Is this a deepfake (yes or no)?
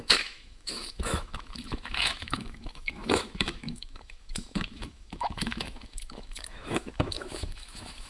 yes